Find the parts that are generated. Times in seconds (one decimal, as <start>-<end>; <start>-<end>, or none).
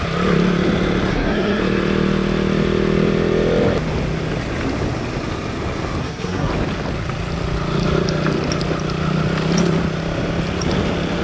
1.1-1.6; 6.0-6.5